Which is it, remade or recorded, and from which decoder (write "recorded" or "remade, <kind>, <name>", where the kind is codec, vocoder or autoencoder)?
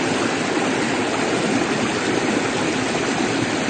recorded